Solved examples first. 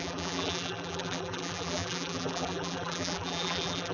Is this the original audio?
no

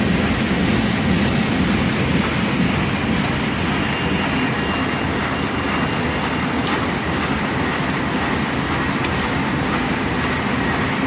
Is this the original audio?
yes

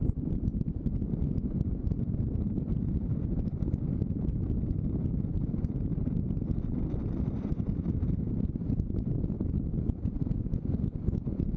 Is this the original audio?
no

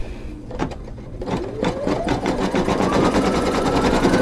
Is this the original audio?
no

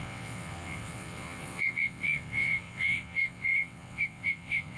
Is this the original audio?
no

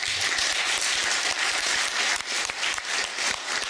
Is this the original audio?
no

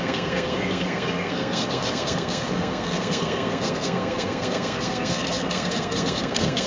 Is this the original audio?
no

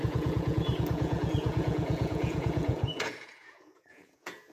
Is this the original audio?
no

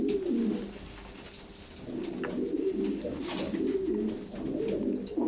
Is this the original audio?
yes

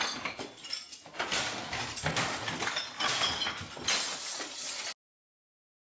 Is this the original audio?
yes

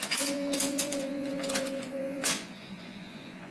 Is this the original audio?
no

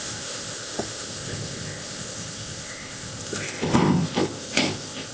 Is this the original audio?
no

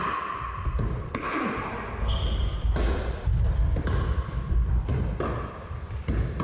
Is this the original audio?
yes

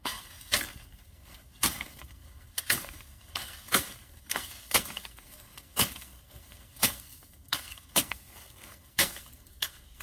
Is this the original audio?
no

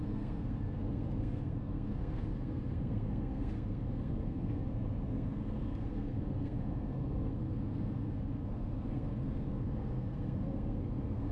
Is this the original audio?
no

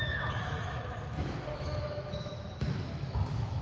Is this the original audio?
no